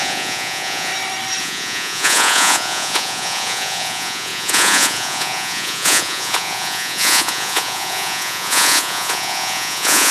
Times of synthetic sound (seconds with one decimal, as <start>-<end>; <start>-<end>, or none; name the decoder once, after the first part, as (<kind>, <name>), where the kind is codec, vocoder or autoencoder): 0.0-0.9 (vocoder, Vocos); 1.4-10.1